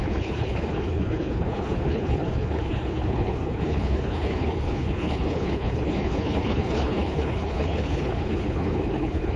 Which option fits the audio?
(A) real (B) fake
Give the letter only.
B